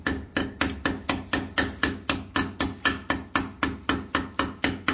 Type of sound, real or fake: real